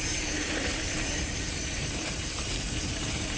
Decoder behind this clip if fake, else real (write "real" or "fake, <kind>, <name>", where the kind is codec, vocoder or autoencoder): fake, vocoder, BigVGAN v2